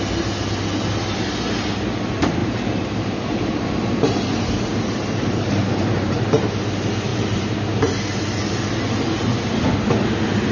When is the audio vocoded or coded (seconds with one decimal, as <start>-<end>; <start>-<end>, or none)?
2.4-6.5; 7.1-7.9